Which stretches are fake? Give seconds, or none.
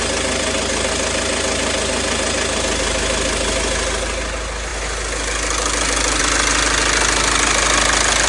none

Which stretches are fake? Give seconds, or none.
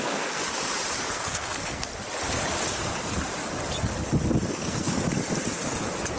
0.0-0.4 (codec, SNAC); 1.0-1.9; 4.5-4.9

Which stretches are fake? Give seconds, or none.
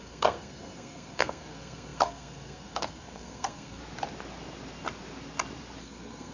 0.0-3.8 (codec, SNAC); 5.8-6.3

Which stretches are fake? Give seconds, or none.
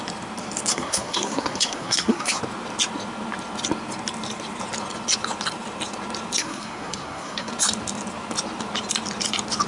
0.7-2.4 (codec, SNAC); 6.4-7.5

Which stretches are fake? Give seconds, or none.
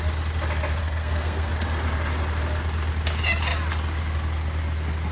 0.8-1.5 (codec, SNAC)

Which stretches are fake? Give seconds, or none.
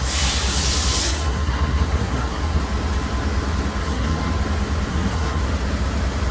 1.0-2.6 (codec, SNAC); 3.8-4.3; 4.9-5.4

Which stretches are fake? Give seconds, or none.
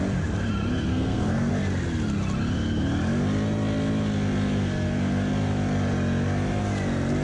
0.9-1.5 (codec, SNAC)